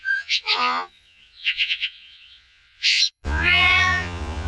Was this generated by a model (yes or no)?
yes